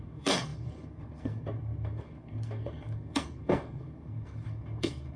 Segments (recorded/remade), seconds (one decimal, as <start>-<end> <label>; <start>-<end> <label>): 0.0-5.2 remade